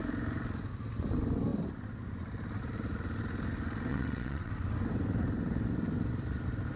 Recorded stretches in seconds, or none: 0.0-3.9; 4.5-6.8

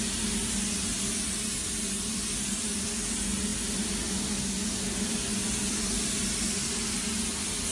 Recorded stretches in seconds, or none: 0.0-7.7

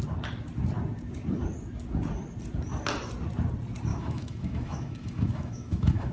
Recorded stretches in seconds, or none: 0.0-3.9

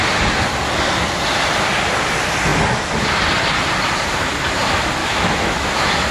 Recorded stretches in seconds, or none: 0.0-5.0

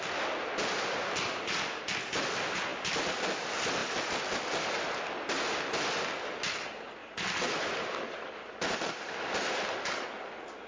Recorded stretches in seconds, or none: 0.0-2.7; 3.2-7.0; 10.0-10.7